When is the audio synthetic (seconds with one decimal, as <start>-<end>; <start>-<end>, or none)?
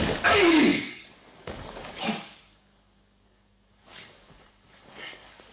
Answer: 0.0-5.5